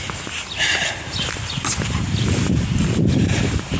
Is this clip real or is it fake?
fake